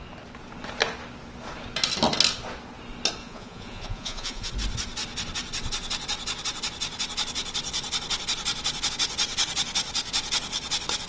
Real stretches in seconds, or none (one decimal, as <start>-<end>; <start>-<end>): 0.0-3.2; 4.5-11.1